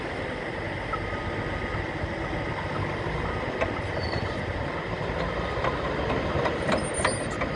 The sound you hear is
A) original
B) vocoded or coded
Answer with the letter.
A